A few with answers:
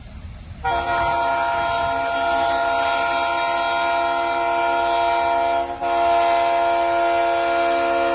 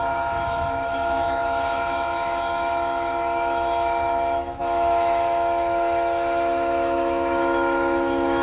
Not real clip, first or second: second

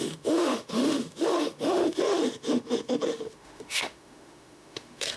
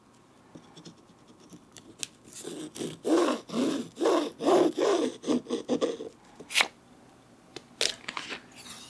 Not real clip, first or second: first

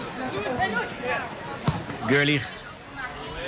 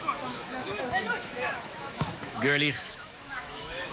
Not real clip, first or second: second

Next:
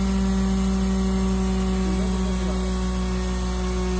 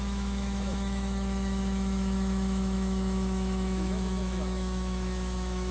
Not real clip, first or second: second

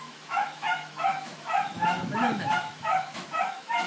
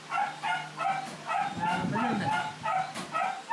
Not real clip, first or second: first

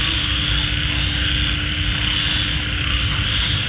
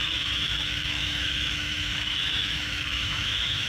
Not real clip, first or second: second